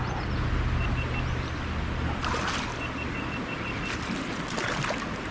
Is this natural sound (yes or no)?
yes